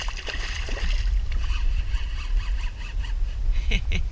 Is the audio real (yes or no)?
yes